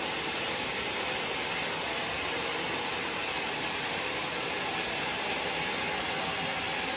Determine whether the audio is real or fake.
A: real